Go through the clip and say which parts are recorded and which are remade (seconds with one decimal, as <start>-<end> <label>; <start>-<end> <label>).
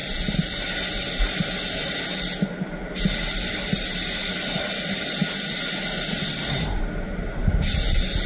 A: 0.0-8.3 recorded